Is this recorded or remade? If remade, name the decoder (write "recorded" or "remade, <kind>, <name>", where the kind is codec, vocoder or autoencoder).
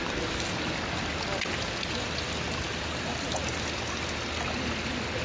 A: recorded